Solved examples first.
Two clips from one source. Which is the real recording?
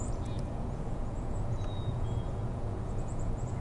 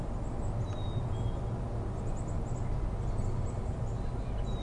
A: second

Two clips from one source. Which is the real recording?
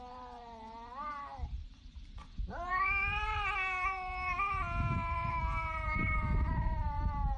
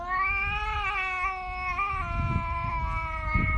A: second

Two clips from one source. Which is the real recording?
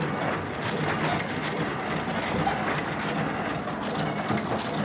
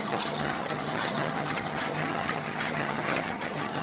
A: first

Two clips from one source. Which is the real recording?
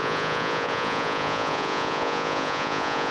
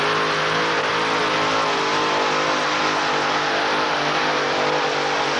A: second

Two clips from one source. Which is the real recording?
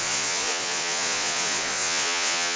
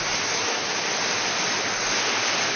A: second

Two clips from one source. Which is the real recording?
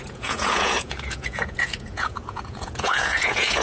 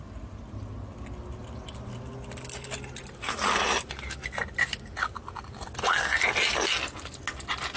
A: second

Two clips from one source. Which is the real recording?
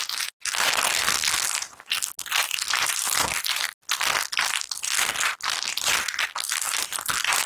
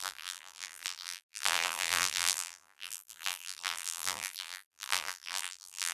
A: first